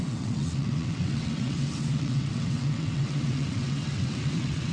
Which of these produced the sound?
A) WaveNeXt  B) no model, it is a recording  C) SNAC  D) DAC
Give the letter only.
A